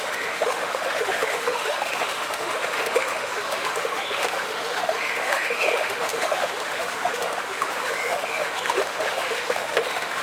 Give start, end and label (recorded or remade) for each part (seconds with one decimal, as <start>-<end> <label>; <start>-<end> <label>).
0.0-10.2 remade